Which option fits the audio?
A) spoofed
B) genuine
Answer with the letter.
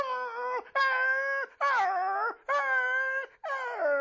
B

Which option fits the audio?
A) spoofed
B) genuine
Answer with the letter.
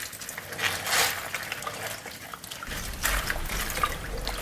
B